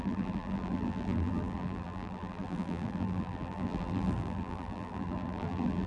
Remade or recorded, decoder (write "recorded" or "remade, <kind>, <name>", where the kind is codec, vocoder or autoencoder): remade, vocoder, BigVGAN v2